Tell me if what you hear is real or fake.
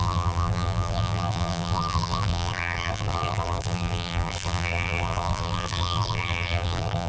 fake